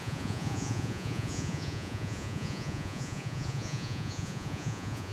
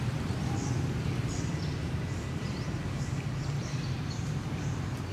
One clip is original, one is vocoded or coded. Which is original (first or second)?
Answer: second